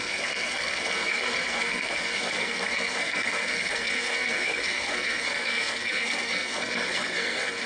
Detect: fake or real fake